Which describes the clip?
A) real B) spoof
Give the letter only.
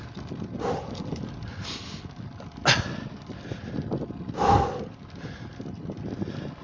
A